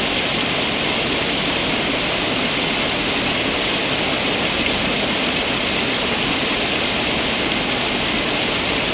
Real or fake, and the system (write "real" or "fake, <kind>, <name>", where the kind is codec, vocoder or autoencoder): real